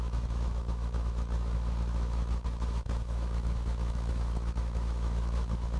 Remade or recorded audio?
remade